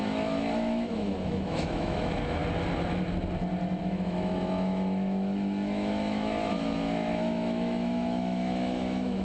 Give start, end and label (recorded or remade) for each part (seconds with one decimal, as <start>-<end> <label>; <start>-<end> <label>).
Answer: 0.0-2.4 remade; 2.4-3.8 recorded; 3.8-9.2 remade